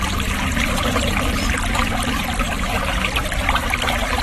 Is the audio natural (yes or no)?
yes